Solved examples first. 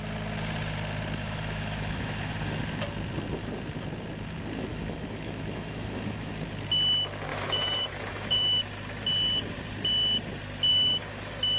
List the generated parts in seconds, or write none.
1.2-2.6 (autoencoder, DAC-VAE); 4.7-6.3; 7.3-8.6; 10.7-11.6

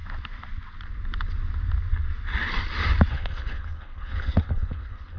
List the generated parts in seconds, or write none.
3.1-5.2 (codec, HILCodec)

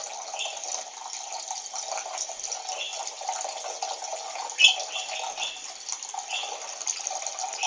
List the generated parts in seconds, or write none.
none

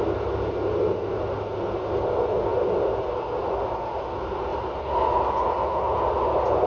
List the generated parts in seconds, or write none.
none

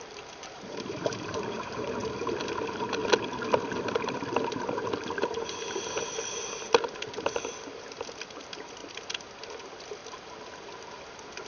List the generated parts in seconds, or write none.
0.0-2.0 (vocoder, BigVGAN v2); 2.6-3.0; 7.1-8.8; 9.4-10.0

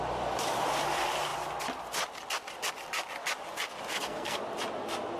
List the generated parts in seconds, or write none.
3.9-4.4 (codec, SNAC)